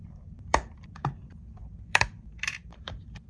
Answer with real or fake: fake